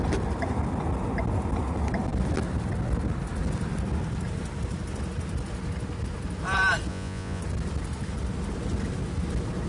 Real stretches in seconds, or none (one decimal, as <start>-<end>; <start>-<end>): 0.0-6.9; 7.4-9.7